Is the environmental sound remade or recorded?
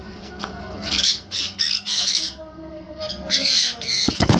remade